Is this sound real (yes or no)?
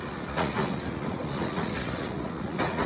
no